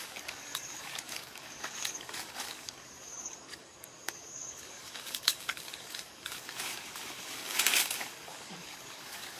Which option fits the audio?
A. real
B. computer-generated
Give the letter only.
B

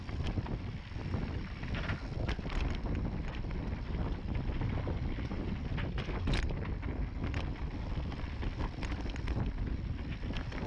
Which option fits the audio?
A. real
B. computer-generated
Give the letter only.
A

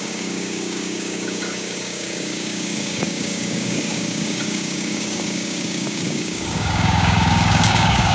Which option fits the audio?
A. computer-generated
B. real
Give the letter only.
A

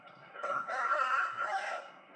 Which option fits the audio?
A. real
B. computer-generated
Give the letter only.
B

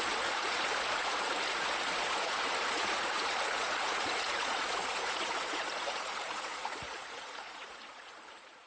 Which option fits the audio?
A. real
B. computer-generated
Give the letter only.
B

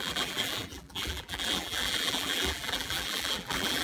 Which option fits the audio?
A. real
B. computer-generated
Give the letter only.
B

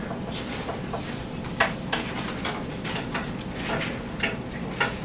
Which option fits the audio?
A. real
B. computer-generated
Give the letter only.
A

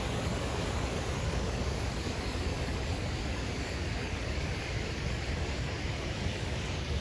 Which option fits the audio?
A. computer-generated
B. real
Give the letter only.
A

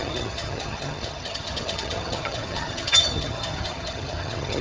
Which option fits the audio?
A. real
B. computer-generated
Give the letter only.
B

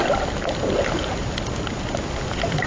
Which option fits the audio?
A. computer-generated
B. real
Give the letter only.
B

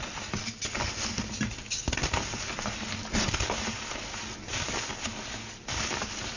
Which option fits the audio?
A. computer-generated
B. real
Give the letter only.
B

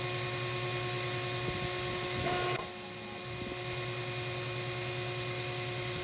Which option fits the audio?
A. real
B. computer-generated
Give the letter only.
A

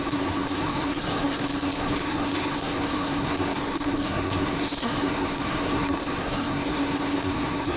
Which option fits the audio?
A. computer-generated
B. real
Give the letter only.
A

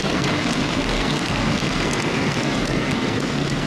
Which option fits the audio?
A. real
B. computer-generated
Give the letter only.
B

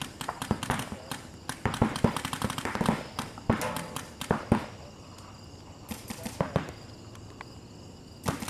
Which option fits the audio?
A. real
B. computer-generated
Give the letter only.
A